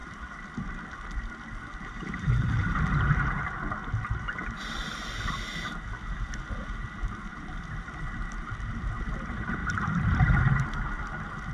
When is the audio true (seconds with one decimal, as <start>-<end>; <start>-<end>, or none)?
0.7-7.3; 8.0-9.6; 10.4-11.5